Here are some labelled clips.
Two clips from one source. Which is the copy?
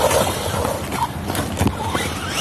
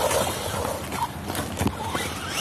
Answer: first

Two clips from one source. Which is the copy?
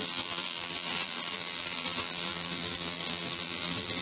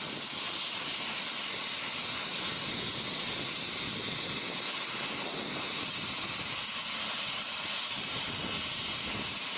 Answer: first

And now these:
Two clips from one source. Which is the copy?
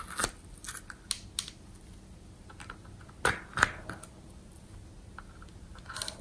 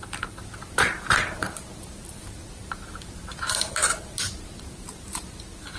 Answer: second